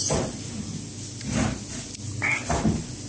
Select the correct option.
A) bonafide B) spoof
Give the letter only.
A